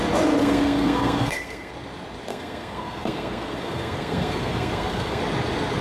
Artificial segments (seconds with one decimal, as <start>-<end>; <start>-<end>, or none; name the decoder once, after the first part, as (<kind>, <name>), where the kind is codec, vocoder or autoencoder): 0.4-1.7 (codec, SNAC); 2.3-5.2